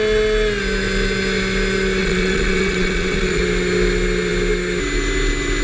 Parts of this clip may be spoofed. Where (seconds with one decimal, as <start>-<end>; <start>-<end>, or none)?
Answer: 2.0-3.4